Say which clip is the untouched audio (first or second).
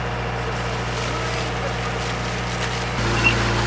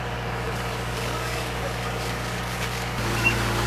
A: first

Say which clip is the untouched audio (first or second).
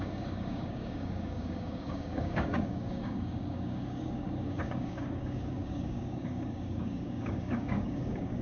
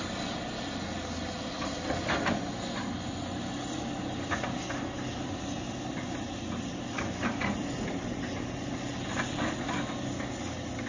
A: second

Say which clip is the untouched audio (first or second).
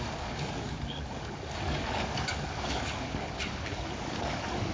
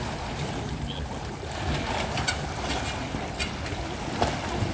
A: second